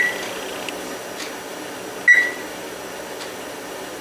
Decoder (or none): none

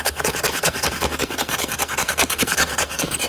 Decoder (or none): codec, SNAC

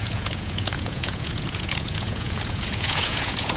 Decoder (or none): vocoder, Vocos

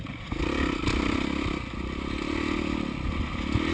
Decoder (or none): none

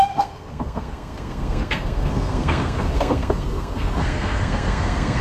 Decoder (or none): codec, SNAC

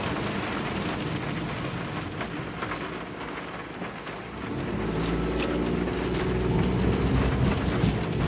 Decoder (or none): none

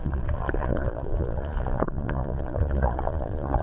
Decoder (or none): vocoder, Vocos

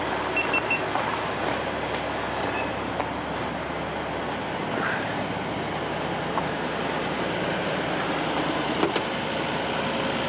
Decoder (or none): none